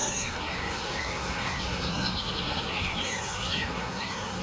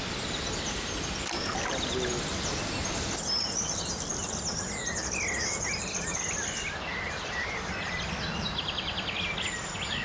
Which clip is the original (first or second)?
second